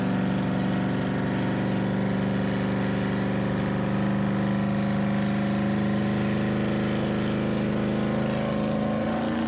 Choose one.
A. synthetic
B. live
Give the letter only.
B